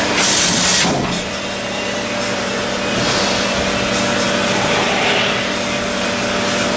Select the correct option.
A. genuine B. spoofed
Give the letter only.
A